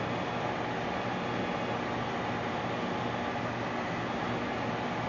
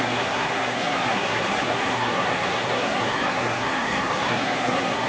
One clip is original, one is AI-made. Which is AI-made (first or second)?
second